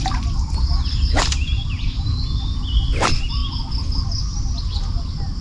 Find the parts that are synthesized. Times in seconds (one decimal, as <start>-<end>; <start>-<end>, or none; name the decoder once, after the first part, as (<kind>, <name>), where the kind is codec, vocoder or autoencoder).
none